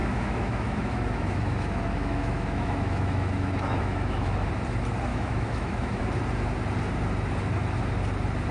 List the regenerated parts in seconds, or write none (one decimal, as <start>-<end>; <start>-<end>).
0.0-4.5; 5.1-6.0